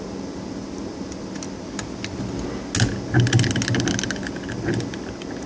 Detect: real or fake real